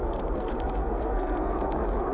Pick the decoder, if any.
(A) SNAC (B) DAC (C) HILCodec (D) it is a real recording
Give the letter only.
A